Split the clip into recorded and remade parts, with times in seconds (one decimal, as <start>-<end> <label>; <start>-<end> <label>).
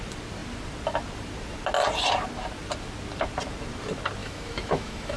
0.0-4.2 recorded; 4.2-5.2 remade